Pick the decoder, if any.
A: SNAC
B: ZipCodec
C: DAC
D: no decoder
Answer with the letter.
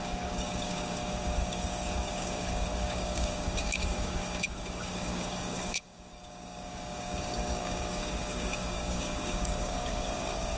C